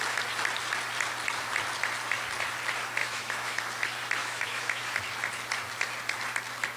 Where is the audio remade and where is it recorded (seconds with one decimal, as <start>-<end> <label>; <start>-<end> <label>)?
0.0-3.0 recorded; 3.0-3.6 remade; 3.6-4.2 recorded; 4.2-4.8 remade; 4.8-6.8 recorded